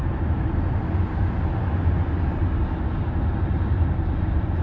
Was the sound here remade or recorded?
recorded